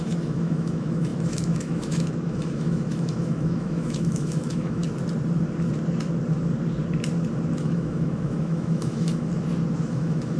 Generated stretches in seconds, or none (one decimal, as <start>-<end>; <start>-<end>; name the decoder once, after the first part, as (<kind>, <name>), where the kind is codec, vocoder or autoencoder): 0.0-4.8 (autoencoder, DAC-VAE); 7.6-9.3; 9.9-10.4